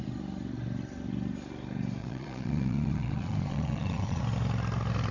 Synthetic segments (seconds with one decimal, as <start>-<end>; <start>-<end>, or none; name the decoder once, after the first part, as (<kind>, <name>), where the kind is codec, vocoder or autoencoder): 2.0-4.2 (vocoder, Vocos)